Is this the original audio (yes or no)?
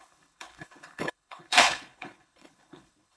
no